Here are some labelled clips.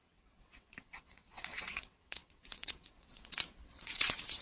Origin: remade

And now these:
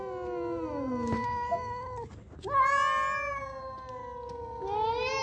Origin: recorded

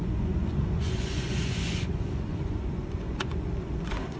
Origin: remade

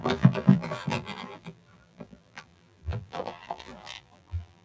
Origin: remade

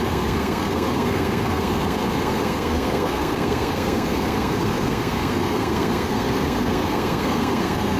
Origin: remade